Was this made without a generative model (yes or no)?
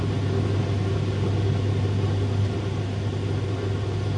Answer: yes